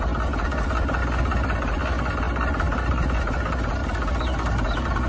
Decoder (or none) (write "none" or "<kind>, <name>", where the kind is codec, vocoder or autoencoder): none